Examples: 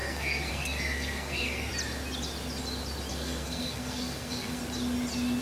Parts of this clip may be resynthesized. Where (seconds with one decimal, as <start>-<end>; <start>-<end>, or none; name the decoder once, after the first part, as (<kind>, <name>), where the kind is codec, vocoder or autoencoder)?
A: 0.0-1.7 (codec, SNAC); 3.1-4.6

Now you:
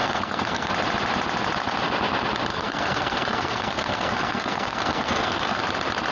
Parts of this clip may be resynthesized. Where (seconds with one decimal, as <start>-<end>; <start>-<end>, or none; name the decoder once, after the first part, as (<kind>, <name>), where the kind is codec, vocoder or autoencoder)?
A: 0.0-0.7 (codec, SNAC); 2.5-5.6

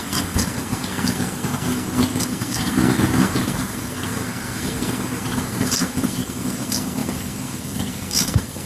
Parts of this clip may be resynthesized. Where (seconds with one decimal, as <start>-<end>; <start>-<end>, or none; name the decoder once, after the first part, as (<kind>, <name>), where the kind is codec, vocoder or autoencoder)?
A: 0.0-8.7 (codec, SNAC)

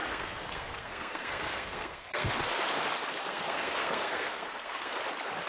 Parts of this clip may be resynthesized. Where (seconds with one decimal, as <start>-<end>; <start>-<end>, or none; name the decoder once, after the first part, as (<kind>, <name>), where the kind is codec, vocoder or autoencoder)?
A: 0.0-2.3 (codec, SNAC); 3.2-4.9